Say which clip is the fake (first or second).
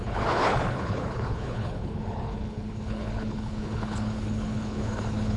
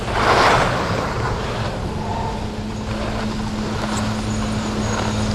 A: first